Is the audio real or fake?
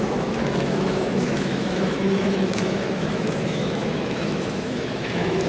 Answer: fake